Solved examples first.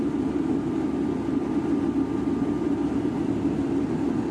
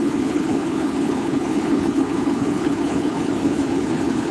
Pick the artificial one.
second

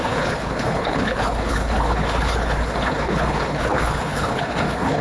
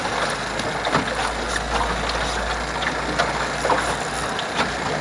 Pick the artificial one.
first